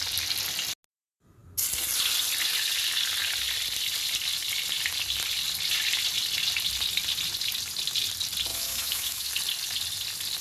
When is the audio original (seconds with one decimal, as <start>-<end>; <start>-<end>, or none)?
0.0-8.5; 9.3-10.4